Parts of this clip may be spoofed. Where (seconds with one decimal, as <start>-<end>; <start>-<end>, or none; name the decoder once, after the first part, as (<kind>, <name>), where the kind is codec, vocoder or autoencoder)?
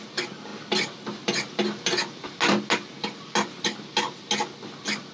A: none